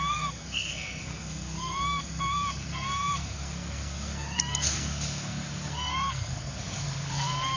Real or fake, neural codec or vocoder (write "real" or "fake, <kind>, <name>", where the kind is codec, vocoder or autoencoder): fake, codec, SNAC